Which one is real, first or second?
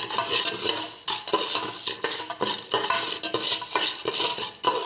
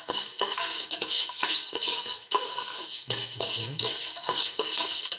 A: first